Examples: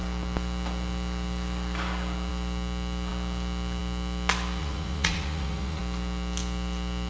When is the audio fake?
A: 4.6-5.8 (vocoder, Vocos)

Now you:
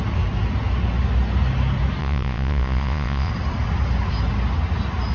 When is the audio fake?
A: 2.0-3.3 (vocoder, Vocos)

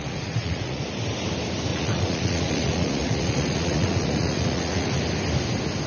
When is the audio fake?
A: 0.0-0.8 (vocoder, Vocos); 1.7-5.0

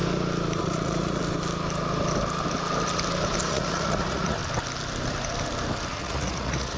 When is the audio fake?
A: 0.6-1.2 (vocoder, Vocos); 3.5-4.4; 5.9-6.8

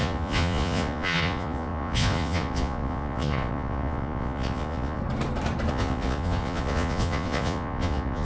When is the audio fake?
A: 0.0-5.0 (vocoder, Vocos); 5.7-8.2

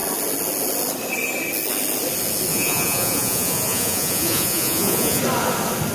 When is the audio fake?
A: 2.5-5.2 (vocoder, Vocos)

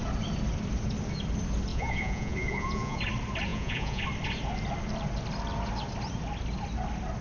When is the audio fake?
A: 1.7-3.0 (vocoder, Vocos); 3.5-4.0

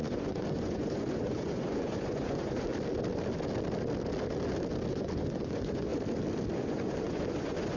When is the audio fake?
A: 0.0-2.7 (vocoder, Vocos); 4.9-5.9; 6.5-7.8